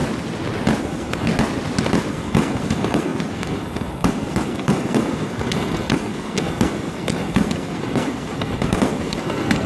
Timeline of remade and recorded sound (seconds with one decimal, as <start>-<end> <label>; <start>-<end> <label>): 0.0-0.8 recorded; 0.8-1.3 remade; 1.3-2.1 recorded; 2.1-9.7 remade